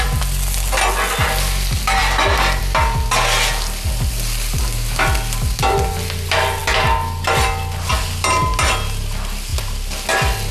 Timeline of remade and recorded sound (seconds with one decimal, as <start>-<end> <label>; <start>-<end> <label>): 0.0-10.5 recorded